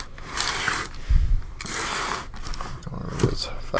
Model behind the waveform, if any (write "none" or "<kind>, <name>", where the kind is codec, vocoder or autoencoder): none